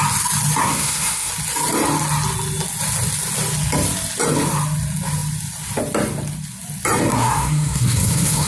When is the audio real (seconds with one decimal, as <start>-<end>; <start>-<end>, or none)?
0.0-0.6; 1.3-7.1